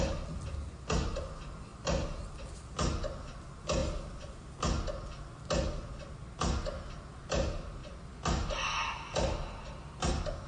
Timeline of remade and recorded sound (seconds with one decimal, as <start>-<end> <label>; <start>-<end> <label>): 0.0-10.5 recorded

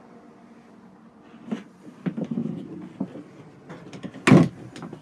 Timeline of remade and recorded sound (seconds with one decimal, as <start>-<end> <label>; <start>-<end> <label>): 0.0-5.0 recorded

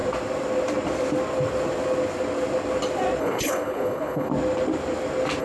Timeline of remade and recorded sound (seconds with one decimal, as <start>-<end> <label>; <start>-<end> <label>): 0.0-3.2 recorded; 3.2-4.3 remade; 4.3-5.4 recorded